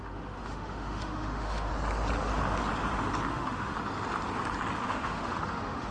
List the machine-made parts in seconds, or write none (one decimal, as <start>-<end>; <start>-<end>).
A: 0.0-1.7; 3.3-3.8; 4.8-5.9